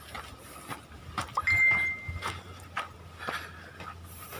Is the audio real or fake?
real